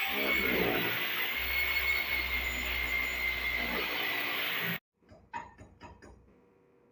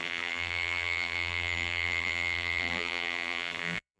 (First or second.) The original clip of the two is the first